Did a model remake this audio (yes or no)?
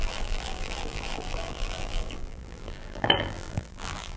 yes